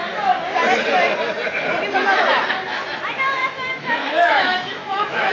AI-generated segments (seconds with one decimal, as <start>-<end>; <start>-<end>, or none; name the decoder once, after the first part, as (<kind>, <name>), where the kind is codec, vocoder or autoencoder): 3.4-5.3 (autoencoder, DAC-VAE)